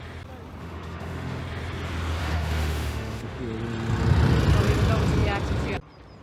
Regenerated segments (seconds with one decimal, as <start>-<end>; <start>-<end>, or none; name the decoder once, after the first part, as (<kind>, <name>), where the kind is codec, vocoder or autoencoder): 0.6-1.4 (autoencoder, DAC-VAE); 2.2-3.4